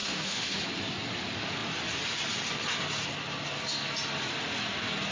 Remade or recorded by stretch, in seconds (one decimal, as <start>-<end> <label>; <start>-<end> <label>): 0.0-0.6 remade; 0.6-5.1 recorded